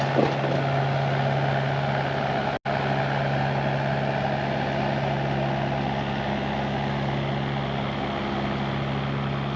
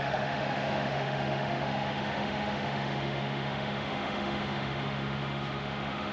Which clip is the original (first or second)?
first